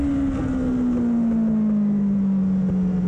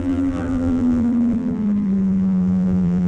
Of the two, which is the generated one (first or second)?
second